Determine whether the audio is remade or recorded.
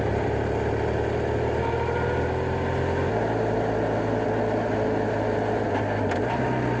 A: recorded